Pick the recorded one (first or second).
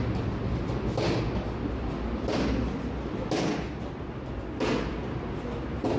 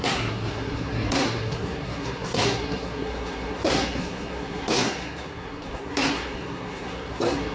first